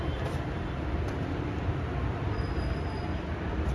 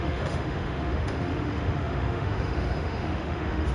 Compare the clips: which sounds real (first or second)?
first